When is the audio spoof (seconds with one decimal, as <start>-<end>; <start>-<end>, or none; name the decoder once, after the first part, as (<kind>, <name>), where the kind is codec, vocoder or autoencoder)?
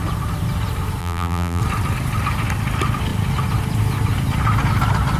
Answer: 1.0-1.6 (vocoder, BigVGAN v2)